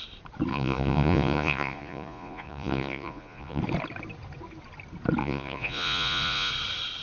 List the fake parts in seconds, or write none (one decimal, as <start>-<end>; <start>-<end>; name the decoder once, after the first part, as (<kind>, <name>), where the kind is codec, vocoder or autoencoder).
0.5-3.6 (vocoder, Vocos); 5.2-6.5